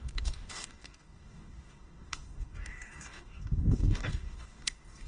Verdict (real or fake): fake